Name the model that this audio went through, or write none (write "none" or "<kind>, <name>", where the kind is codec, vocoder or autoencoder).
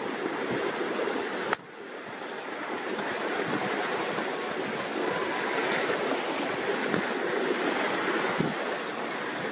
none